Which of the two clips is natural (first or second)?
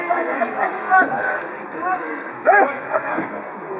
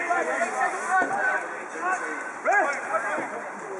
second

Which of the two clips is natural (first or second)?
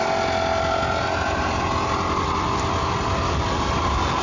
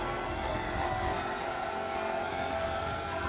first